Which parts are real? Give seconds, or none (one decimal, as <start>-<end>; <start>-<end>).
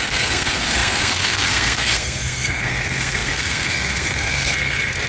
none